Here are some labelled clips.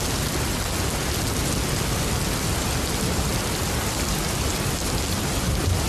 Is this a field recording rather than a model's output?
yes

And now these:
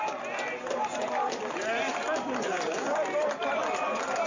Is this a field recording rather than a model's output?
yes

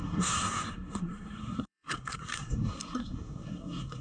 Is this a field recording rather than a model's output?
no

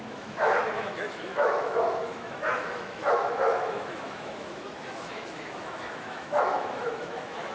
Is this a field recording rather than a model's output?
no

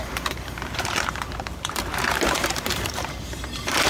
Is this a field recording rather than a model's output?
no